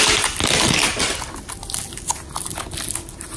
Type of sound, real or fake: real